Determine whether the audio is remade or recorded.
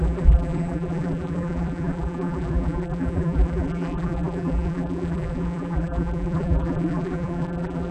remade